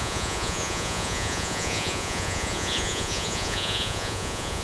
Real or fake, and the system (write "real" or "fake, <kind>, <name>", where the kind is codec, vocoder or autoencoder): fake, vocoder, Vocos